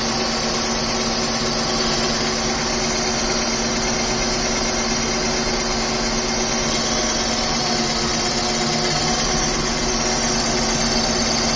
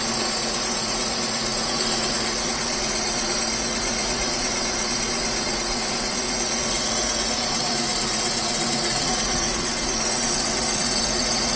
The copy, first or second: second